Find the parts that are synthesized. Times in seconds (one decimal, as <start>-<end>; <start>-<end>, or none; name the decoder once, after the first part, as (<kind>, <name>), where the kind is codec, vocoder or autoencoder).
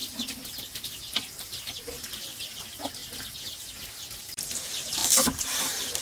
0.5-3.0 (vocoder, BigVGAN v2); 4.2-5.0; 5.6-6.0